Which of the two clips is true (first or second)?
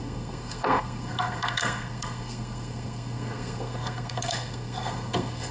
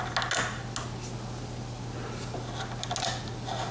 second